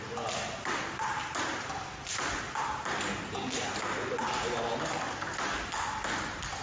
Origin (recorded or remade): recorded